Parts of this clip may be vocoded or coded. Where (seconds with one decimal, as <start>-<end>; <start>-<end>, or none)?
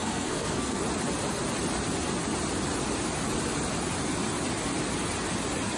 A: 0.0-0.8